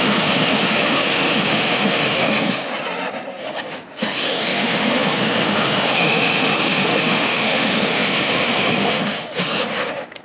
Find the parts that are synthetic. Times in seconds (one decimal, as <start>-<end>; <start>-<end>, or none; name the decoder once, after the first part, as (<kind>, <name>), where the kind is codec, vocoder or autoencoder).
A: 0.0-2.7 (autoencoder, DAC-VAE); 3.4-10.2